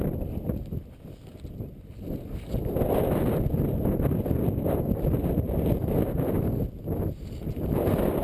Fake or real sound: real